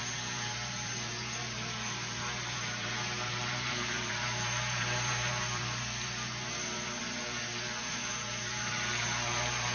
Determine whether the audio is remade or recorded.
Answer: remade